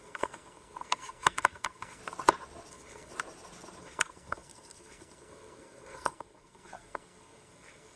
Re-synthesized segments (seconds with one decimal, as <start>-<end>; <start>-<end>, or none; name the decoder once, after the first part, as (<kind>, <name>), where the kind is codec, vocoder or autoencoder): 0.0-2.0 (codec, SNAC); 2.7-3.1; 3.8-8.0